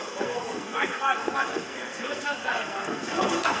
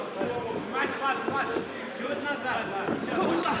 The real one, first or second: second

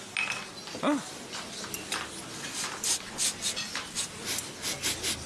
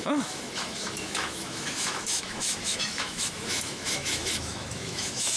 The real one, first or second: first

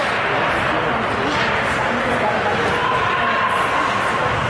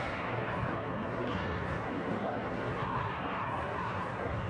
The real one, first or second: first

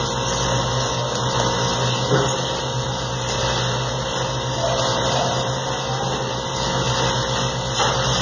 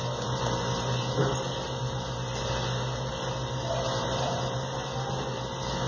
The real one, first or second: second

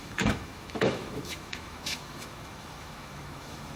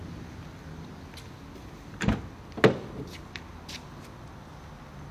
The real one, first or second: second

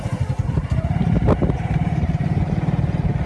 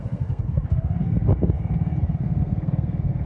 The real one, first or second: first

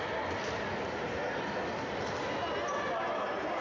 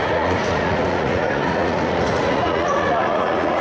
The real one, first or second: first